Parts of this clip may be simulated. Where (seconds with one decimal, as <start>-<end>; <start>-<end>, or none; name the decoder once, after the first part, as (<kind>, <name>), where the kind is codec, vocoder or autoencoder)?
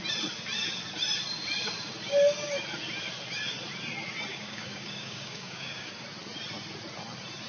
4.3-5.9 (codec, DAC)